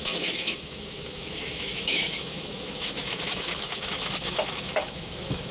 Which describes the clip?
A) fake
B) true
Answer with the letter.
A